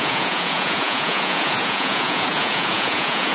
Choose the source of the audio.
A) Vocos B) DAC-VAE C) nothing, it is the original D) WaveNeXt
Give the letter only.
A